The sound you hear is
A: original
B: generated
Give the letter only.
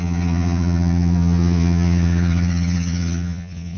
B